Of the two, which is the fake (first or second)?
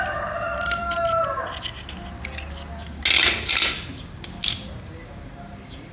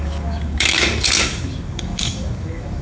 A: second